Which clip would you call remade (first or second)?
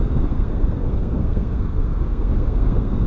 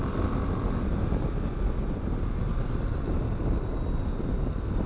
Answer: first